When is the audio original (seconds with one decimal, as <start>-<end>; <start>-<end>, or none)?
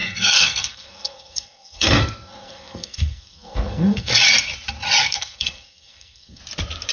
4.1-5.0; 6.4-6.9